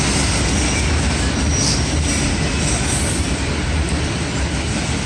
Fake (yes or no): no